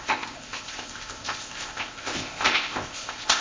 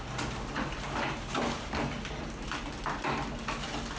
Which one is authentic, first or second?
second